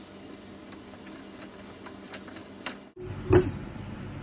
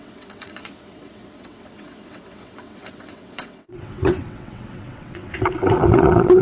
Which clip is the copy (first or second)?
second